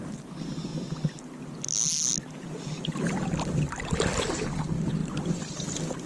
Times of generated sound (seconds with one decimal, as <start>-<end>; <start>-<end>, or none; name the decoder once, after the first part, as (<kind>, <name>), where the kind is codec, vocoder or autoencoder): none